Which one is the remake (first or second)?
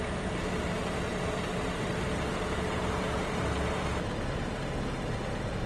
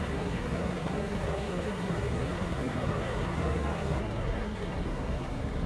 second